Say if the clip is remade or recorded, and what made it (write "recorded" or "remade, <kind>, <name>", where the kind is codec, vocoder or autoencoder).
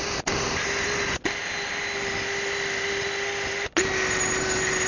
recorded